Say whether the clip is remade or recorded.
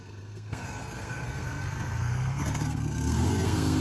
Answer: remade